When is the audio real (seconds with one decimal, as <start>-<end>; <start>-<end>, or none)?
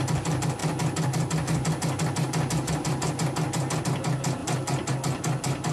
0.0-5.7